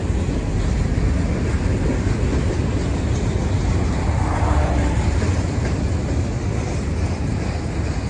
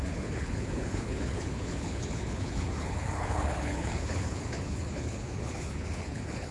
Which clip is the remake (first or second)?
second